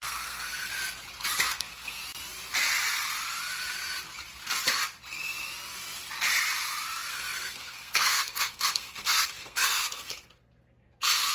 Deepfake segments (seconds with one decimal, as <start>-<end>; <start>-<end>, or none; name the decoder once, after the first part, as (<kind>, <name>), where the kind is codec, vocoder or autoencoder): 0.0-0.7 (codec, SNAC); 1.5-2.0; 7.1-11.3